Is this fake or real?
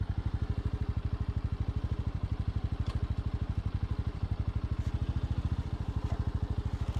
real